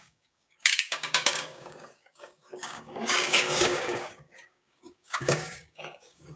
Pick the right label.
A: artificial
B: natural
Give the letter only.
A